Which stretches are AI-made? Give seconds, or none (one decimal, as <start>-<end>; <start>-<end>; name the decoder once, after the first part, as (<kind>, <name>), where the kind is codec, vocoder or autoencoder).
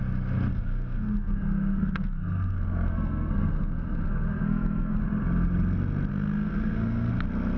0.5-5.0 (codec, SNAC); 6.1-7.1